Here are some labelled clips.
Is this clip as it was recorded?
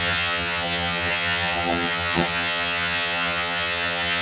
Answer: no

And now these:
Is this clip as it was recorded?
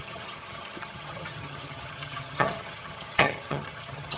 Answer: no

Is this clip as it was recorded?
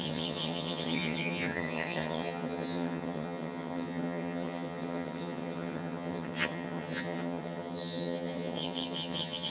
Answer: no